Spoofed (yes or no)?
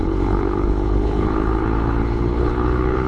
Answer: yes